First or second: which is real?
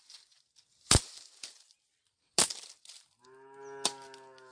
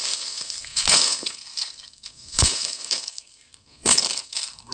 first